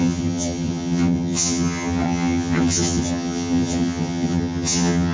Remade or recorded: remade